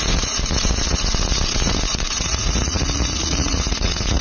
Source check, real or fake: fake